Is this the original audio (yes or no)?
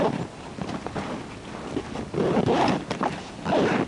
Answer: no